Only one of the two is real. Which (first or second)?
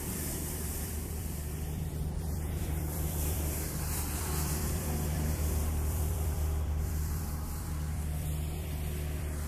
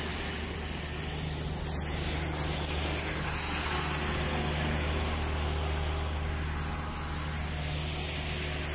second